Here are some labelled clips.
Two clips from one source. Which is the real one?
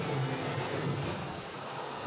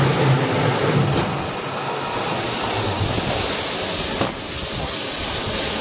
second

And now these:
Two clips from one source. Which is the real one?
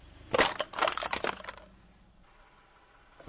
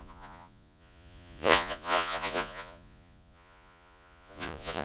first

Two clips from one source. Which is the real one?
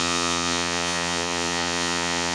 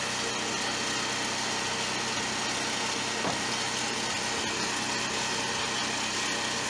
second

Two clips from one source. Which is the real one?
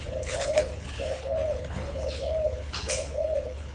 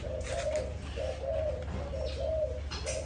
second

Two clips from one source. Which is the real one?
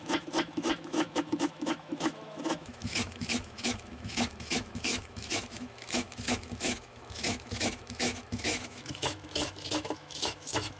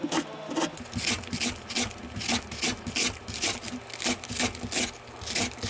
second